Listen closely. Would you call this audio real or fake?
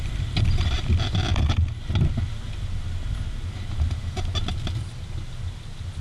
real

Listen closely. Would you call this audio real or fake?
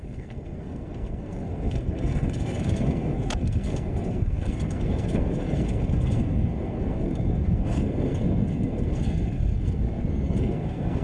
fake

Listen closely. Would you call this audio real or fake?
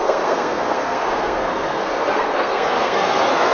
fake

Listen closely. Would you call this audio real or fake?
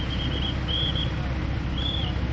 real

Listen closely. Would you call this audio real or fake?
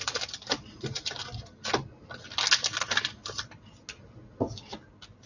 real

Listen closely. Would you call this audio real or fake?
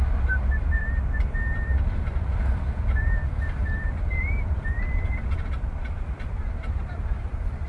fake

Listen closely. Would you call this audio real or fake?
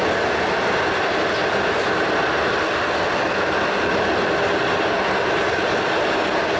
real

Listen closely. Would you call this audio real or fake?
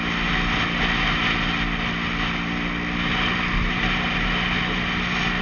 real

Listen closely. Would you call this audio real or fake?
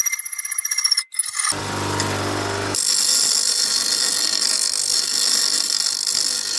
real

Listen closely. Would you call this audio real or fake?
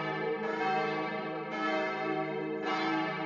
fake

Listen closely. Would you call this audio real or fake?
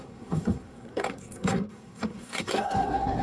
fake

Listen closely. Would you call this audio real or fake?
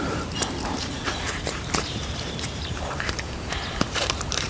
fake